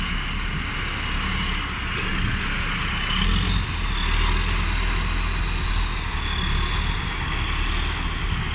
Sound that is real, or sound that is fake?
real